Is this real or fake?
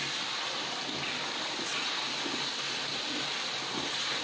real